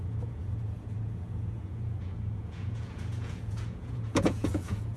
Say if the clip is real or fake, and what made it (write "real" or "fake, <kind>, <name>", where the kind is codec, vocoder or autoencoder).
fake, vocoder, Vocos